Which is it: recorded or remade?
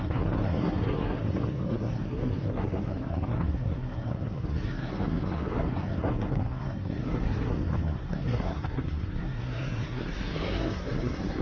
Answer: remade